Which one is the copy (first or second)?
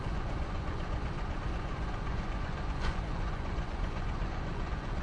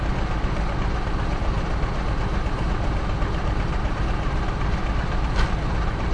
first